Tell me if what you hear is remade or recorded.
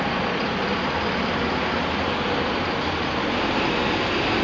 recorded